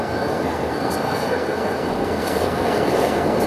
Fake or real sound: fake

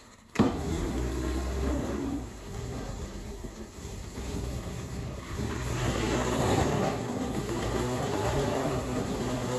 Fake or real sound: fake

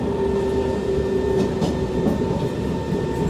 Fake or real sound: real